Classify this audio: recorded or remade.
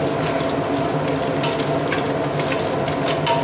recorded